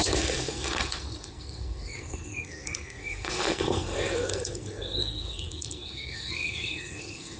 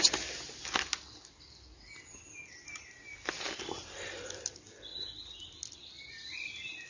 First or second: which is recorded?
second